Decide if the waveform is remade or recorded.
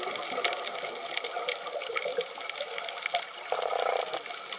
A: recorded